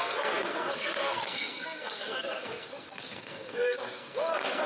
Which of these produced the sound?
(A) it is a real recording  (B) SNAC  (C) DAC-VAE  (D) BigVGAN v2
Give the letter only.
B